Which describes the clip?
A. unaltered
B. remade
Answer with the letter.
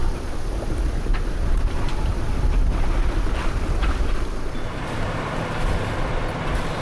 A